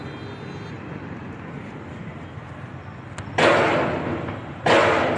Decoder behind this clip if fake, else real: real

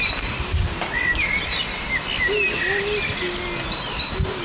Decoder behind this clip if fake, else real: real